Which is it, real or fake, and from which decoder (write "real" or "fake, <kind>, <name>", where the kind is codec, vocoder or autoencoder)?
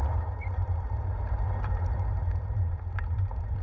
fake, vocoder, BigVGAN v2